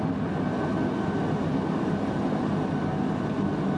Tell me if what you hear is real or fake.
real